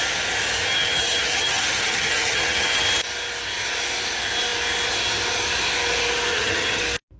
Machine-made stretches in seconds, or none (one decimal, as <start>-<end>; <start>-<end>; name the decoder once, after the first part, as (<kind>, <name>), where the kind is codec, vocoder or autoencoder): 0.7-2.8 (vocoder, HiFi-GAN); 6.3-6.8